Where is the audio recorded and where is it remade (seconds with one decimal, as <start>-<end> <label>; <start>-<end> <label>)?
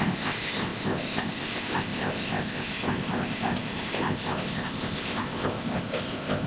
0.0-6.5 remade